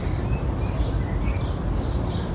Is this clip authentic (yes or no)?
yes